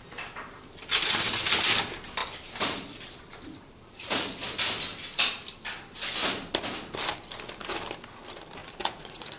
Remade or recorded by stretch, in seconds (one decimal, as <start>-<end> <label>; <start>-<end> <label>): 0.0-8.6 recorded; 8.6-9.4 remade